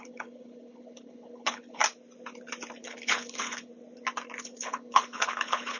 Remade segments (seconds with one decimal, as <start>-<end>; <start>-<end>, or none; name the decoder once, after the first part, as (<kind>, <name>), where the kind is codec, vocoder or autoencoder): 0.0-1.8 (codec, HILCodec); 2.8-3.7; 4.4-5.8